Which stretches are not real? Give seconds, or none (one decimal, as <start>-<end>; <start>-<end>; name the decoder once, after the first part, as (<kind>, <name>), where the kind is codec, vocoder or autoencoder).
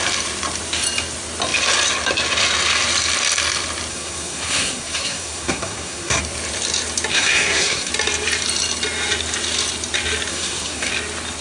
3.9-6.2 (codec, SNAC); 7.1-7.9; 10.3-10.9